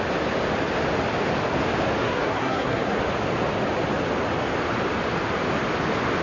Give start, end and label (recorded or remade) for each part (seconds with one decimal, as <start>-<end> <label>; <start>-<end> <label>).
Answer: 0.0-2.0 recorded; 2.0-3.0 remade; 3.0-6.2 recorded